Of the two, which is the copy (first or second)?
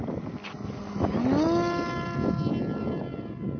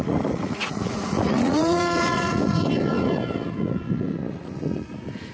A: second